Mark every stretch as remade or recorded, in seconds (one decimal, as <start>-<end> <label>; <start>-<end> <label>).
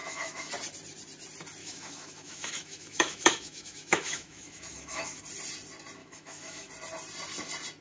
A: 0.0-0.5 remade; 0.5-1.6 recorded; 1.6-5.2 remade; 5.2-6.0 recorded; 6.0-6.7 remade; 6.7-7.8 recorded